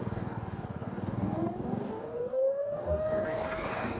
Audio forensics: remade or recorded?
remade